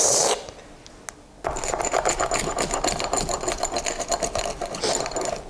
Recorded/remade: recorded